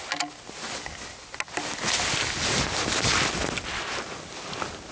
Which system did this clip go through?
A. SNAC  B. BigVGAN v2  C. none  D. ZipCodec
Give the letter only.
C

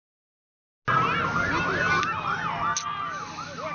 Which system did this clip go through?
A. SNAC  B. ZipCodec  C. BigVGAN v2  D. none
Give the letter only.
D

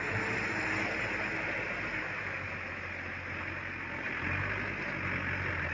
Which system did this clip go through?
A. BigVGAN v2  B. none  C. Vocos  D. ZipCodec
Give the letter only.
B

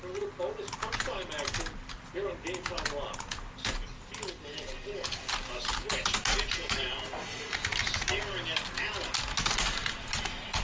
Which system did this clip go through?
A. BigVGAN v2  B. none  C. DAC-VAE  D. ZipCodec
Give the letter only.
B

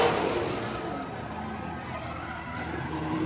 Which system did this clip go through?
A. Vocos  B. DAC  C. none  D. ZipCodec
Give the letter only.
C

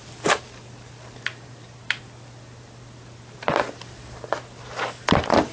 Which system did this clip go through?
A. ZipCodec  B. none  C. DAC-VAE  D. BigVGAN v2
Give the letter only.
B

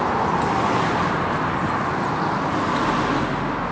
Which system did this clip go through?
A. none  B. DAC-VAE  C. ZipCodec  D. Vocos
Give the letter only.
A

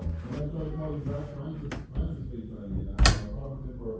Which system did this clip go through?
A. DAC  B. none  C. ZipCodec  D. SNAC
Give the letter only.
B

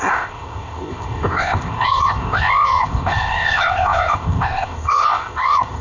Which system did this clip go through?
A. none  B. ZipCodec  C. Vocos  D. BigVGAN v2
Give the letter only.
B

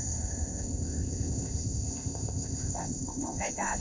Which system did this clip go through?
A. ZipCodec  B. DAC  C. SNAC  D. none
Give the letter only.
A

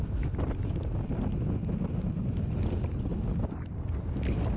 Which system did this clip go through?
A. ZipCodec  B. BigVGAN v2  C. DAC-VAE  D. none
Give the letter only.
D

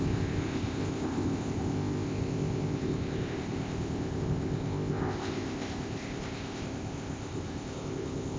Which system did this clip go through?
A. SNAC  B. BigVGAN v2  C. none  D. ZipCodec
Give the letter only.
D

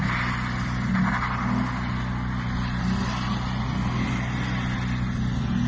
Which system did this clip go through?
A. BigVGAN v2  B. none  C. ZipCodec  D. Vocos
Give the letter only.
B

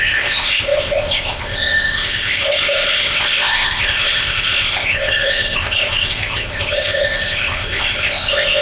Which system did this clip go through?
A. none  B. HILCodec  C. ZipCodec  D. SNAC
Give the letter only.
C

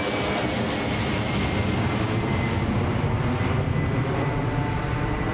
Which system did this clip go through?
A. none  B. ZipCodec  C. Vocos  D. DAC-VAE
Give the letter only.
A